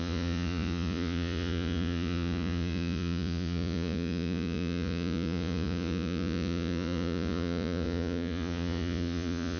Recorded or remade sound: remade